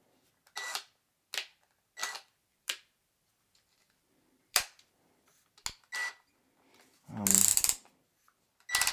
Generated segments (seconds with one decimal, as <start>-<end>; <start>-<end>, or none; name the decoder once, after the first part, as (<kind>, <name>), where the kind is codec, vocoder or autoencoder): 2.0-5.5 (vocoder, BigVGAN v2)